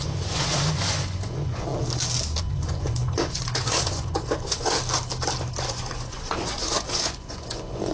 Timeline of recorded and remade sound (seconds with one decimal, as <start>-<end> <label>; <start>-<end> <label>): 0.0-1.7 remade; 1.7-2.4 recorded; 2.4-4.8 remade; 4.8-5.7 recorded; 5.7-7.9 remade